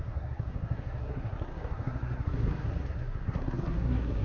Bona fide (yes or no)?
no